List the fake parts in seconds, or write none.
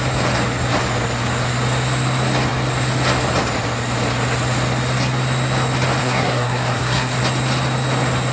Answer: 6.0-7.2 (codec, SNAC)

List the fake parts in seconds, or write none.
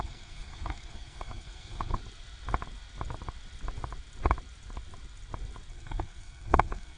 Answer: 0.0-2.0 (codec, SNAC); 5.7-7.0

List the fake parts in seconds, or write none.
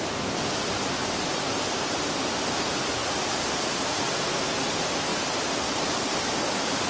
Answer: none